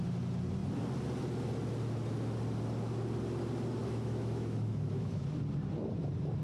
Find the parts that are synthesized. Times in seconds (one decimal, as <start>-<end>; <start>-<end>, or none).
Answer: 3.8-5.2

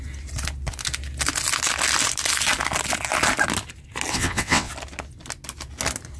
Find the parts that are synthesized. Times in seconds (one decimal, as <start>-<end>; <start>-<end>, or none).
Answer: 4.1-4.7

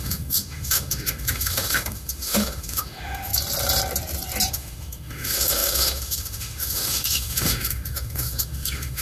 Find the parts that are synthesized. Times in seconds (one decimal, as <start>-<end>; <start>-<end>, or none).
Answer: 0.0-3.3; 4.5-9.0

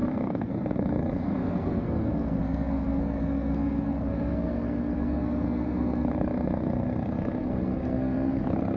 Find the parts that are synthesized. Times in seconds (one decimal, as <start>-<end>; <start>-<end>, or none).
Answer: 0.0-8.8

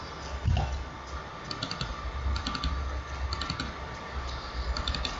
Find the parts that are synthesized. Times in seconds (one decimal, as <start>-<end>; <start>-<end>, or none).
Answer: none

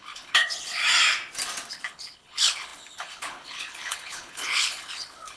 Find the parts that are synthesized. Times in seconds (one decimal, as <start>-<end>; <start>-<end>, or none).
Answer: 0.0-0.8; 1.7-5.4

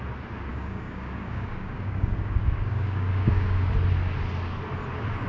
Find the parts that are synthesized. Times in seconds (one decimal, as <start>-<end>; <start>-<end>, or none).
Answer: 0.5-3.7

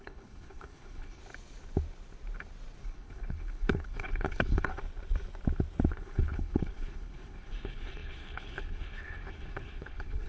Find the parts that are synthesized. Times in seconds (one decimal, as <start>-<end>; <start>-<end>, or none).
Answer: 0.0-1.2; 2.8-4.7; 5.9-10.3